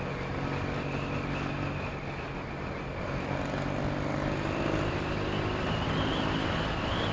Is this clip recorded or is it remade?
recorded